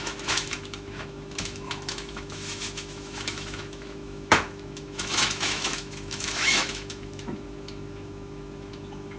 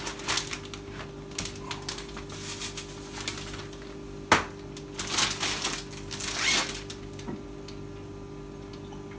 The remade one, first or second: first